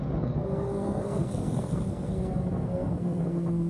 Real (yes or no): no